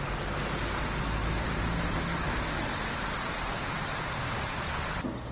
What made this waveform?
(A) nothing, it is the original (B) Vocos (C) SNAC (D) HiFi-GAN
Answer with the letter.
A